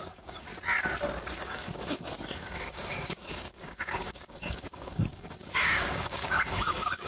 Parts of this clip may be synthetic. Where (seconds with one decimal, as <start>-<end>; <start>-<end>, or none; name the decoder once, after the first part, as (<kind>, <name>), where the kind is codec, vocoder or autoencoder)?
0.0-0.5 (codec, DAC); 1.3-7.1